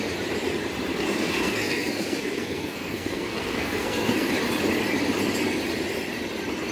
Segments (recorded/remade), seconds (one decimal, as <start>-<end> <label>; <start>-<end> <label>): 0.0-0.9 recorded; 0.9-4.3 remade; 4.3-6.7 recorded

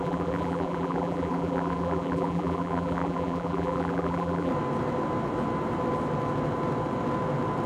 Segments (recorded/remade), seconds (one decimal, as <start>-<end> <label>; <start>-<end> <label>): 0.0-4.5 remade; 4.5-7.7 recorded

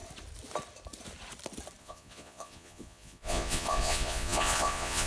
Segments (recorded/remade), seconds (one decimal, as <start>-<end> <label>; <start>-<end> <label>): 0.0-1.8 recorded; 1.8-5.1 remade

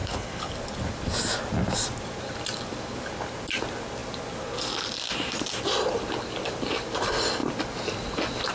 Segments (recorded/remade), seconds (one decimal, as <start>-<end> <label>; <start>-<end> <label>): 0.0-0.5 remade; 0.5-8.5 recorded

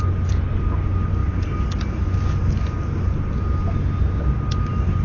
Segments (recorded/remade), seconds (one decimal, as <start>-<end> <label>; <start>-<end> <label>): 0.0-5.0 recorded